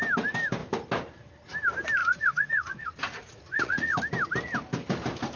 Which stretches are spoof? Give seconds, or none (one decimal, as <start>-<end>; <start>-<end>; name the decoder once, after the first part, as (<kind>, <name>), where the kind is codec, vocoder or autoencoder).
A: 2.0-4.0 (vocoder, Vocos)

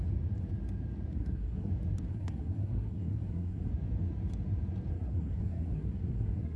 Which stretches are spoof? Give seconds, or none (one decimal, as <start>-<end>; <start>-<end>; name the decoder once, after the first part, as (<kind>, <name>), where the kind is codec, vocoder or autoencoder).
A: 1.1-1.7 (codec, SNAC); 2.1-3.7; 4.9-6.6

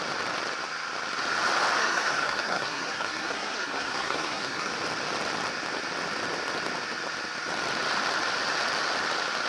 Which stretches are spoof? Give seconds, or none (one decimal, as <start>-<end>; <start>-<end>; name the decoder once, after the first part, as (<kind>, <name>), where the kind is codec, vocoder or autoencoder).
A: 1.8-4.7 (codec, SNAC)

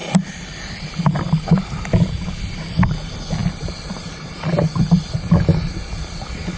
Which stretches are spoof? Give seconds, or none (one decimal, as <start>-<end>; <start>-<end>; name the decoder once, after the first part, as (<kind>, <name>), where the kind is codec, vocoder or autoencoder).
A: none

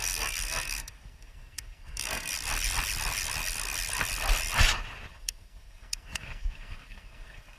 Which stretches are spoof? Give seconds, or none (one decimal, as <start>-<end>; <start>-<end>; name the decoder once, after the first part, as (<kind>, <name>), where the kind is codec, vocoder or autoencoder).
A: 0.0-2.3 (codec, SNAC); 5.1-7.6

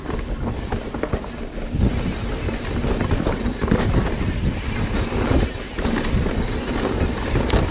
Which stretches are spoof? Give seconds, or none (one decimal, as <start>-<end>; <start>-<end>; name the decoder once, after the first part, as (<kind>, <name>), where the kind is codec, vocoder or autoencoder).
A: 5.7-6.2 (vocoder, BigVGAN v2)

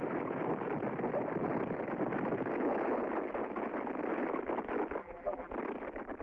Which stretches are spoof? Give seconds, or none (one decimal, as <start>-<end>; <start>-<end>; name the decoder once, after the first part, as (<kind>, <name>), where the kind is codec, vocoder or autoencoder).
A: 5.0-5.5 (vocoder, BigVGAN v2)

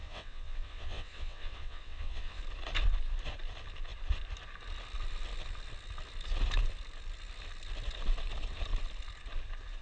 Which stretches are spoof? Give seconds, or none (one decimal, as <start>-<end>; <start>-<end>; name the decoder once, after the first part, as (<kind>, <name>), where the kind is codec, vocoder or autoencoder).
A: 0.0-2.4 (vocoder, WaveNeXt)